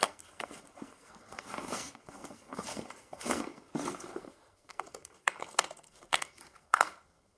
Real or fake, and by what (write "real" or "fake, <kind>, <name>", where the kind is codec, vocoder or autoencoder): fake, codec, SNAC